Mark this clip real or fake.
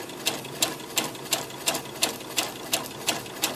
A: real